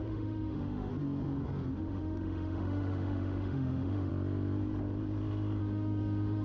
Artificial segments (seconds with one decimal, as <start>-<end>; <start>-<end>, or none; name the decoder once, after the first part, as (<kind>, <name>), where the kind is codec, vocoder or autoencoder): 0.0-0.9 (autoencoder, DAC-VAE); 1.7-4.1; 5.6-6.4